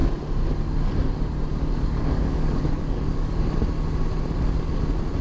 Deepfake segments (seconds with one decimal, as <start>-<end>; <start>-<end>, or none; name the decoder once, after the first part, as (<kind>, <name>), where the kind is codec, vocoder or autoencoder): 1.5-3.4 (codec, DAC)